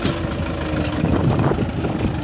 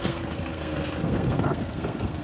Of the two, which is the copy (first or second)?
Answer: second